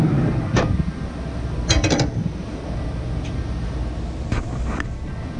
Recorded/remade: recorded